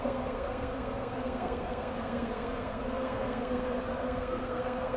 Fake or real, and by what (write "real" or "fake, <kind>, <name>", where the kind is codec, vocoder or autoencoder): fake, codec, SNAC